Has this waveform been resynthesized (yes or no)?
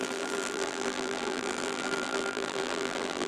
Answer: yes